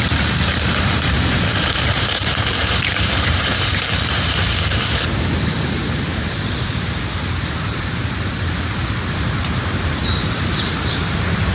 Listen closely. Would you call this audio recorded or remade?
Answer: remade